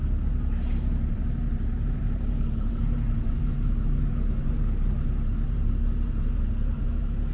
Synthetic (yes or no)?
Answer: yes